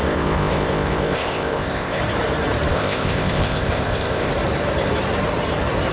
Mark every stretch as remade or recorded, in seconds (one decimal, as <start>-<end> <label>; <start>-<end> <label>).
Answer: 0.0-2.0 remade; 2.0-2.7 recorded; 2.7-4.3 remade; 4.3-5.9 recorded